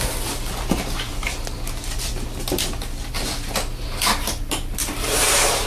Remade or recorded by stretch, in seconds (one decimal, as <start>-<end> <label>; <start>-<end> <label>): 0.0-4.8 recorded; 4.8-5.7 remade